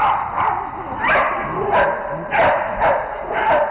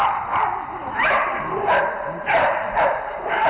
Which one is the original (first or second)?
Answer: first